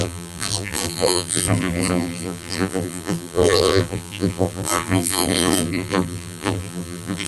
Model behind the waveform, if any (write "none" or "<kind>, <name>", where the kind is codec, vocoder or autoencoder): vocoder, BigVGAN v2